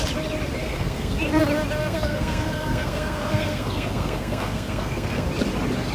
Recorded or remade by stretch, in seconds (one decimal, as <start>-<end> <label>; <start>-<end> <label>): 0.0-0.6 recorded; 0.6-1.3 remade; 1.3-1.8 recorded; 1.8-5.3 remade; 5.3-5.9 recorded